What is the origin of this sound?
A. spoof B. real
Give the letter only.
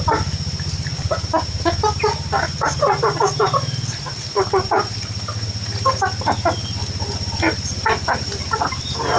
B